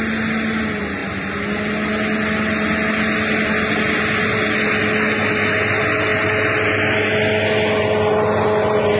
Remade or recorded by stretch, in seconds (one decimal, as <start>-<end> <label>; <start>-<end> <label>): 0.0-9.0 recorded